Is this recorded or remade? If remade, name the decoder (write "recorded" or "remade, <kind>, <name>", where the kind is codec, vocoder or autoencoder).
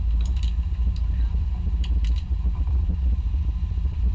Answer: remade, vocoder, BigVGAN v2